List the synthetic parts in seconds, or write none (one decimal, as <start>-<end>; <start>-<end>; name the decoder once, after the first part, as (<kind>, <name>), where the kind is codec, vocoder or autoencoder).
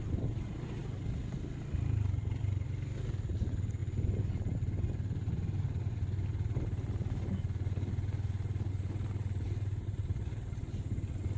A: none